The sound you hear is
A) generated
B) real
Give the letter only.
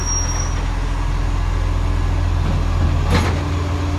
B